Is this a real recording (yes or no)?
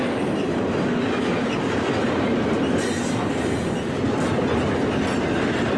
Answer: yes